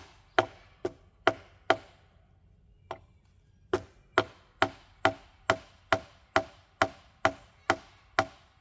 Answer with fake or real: real